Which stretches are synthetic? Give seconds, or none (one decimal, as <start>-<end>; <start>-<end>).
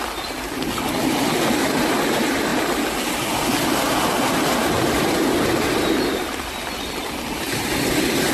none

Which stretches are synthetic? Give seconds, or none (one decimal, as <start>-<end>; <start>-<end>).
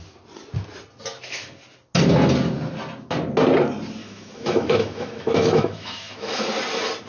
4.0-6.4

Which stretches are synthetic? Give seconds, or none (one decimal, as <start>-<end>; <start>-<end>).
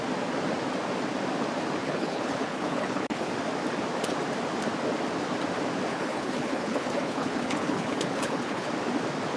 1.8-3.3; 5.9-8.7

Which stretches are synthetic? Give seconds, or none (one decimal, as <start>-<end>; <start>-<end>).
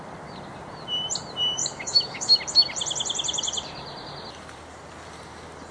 1.6-2.4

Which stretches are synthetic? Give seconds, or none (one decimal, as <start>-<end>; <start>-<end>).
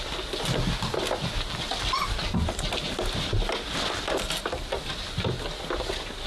none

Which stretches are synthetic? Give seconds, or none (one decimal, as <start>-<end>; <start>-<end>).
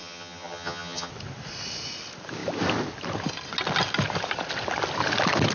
0.0-1.1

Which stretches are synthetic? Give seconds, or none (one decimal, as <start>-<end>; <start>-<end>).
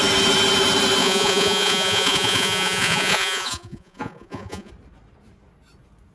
1.0-4.7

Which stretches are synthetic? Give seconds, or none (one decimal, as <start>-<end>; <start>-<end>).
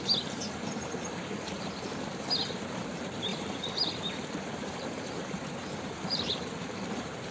0.0-7.3